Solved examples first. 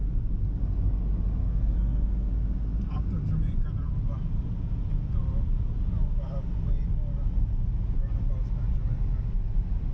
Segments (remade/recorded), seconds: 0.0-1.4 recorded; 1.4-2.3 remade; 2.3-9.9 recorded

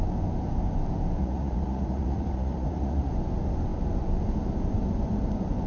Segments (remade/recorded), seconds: 0.0-1.2 recorded; 1.2-3.1 remade; 3.1-5.7 recorded

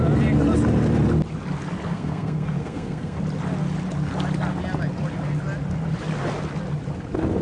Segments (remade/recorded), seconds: 0.0-1.9 recorded; 1.9-3.2 remade; 3.2-7.4 recorded

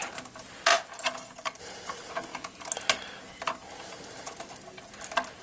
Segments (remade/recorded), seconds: 0.0-5.4 recorded

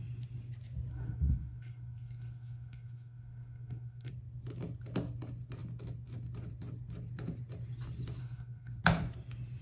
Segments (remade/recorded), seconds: 0.0-0.9 recorded; 0.9-4.1 remade; 4.1-8.2 recorded; 8.2-8.8 remade; 8.8-9.6 recorded

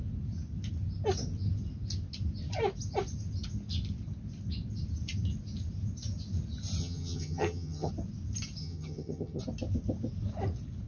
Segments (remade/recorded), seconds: 0.0-6.8 recorded; 6.8-7.9 remade; 7.9-8.6 recorded; 8.6-9.4 remade; 9.4-10.9 recorded

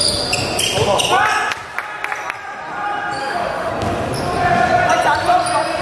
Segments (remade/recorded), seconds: 0.0-3.2 recorded; 3.2-3.7 remade; 3.7-5.8 recorded

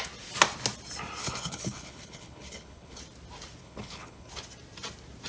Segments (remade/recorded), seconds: 0.0-1.2 recorded; 1.2-3.0 remade; 3.0-3.6 recorded; 3.6-4.3 remade; 4.3-5.3 recorded